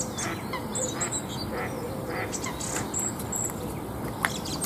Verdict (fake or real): real